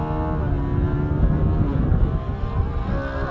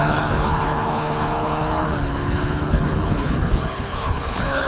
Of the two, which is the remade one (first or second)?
second